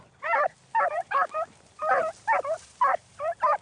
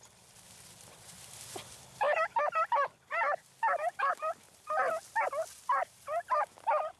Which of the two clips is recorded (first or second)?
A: second